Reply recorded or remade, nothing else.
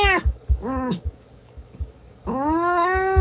remade